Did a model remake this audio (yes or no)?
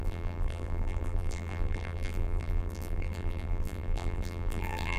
yes